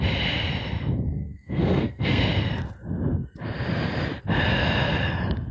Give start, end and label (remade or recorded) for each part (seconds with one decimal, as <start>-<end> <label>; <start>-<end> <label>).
0.0-1.2 recorded; 1.2-2.2 remade; 2.2-5.5 recorded